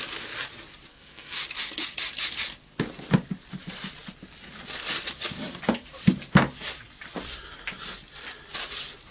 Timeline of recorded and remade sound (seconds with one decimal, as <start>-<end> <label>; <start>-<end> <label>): 0.0-0.9 recorded; 0.9-1.4 remade; 1.4-9.1 recorded